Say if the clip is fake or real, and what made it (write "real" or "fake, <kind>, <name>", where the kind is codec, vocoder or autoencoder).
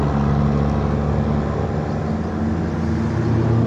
real